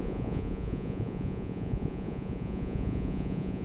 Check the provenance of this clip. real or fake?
fake